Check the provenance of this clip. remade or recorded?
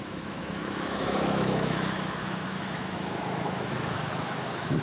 remade